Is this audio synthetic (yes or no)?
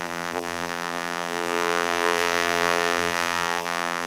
yes